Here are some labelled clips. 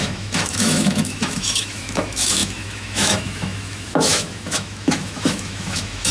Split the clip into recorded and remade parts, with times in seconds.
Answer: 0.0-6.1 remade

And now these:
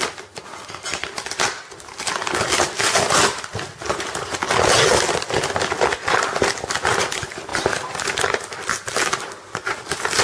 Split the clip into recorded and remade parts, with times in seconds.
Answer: 0.0-10.2 recorded